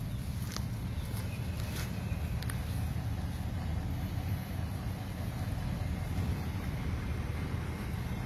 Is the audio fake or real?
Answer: real